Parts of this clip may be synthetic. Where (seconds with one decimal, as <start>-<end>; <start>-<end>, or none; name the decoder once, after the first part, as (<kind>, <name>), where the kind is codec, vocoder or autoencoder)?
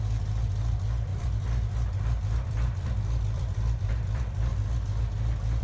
0.0-4.5 (vocoder, BigVGAN v2)